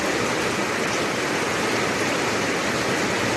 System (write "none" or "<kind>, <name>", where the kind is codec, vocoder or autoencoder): none